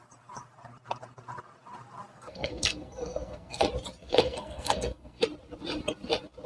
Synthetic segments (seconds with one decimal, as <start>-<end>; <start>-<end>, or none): 2.1-3.6; 4.0-5.2